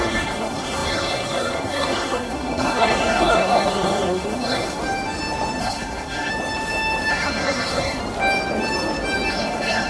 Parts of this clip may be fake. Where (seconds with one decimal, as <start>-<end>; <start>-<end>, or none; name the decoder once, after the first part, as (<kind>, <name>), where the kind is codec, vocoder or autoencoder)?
0.0-4.8 (codec, SNAC); 5.6-6.3; 7.1-8.0; 9.3-9.9